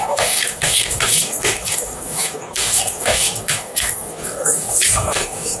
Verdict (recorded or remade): remade